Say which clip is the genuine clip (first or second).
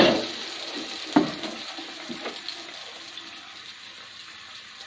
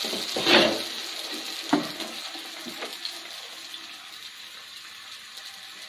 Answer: second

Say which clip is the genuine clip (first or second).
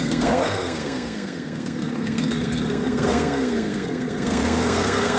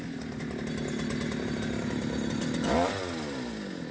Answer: second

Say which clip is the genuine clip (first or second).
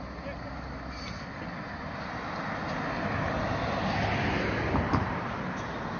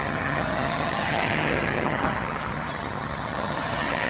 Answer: first